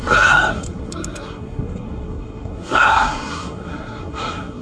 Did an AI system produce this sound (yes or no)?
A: yes